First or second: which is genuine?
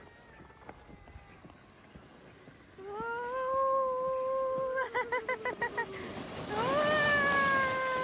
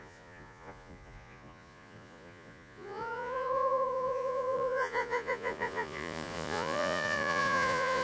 first